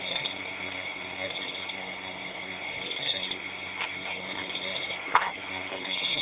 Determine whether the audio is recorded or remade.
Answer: remade